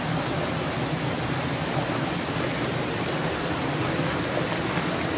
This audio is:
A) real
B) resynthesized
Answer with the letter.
A